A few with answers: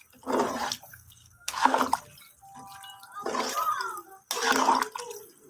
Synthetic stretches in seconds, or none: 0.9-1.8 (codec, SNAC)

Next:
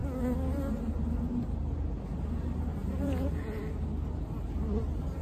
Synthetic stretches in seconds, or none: 2.7-3.6 (vocoder, Vocos)

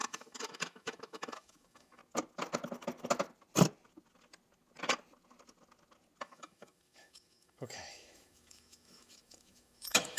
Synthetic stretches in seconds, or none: 0.0-2.0 (autoencoder, DAC-VAE); 6.2-10.2

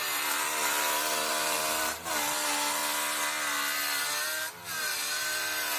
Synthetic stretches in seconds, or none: 0.0-2.8 (vocoder, BigVGAN v2); 4.8-5.8

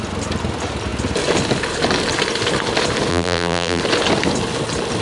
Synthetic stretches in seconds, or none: 3.1-3.8 (vocoder, BigVGAN v2)

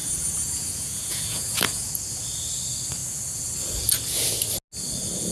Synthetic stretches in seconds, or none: 0.0-1.9 (vocoder, Vocos)

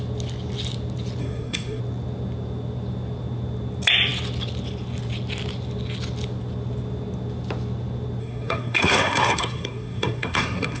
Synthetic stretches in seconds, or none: 1.2-1.8 (codec, SNAC); 8.2-10.8